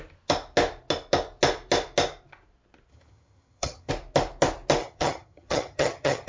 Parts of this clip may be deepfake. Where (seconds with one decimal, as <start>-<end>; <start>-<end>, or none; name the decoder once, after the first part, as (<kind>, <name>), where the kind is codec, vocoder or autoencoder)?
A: 2.9-3.9 (vocoder, HiFi-GAN); 4.8-6.3